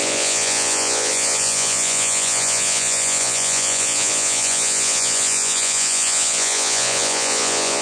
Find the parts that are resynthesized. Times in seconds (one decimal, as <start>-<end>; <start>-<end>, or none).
0.0-7.8